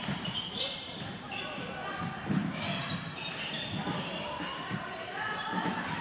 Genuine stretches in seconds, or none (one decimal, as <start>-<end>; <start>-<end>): 2.4-4.3